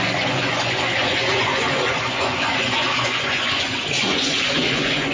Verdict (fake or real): fake